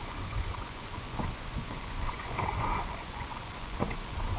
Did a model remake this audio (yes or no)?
yes